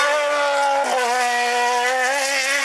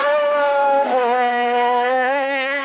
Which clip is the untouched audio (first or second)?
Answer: first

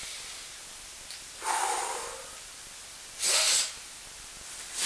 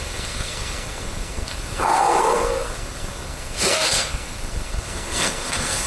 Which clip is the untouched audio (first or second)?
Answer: first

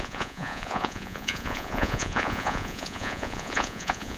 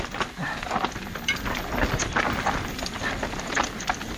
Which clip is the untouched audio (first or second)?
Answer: second